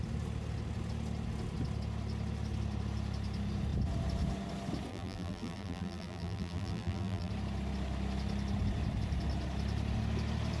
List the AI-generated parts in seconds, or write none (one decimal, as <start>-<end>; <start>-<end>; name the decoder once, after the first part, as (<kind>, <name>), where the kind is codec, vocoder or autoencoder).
4.9-7.3 (vocoder, BigVGAN v2)